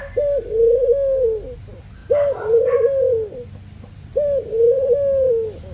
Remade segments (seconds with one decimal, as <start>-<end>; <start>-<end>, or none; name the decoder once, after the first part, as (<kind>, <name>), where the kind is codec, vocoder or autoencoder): none